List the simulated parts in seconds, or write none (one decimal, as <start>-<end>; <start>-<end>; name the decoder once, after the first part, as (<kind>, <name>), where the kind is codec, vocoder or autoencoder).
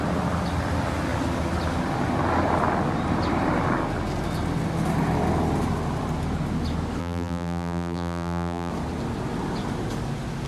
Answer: 7.0-8.7 (vocoder, BigVGAN v2)